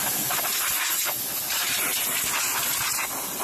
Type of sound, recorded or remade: recorded